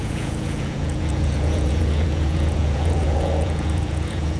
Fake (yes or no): yes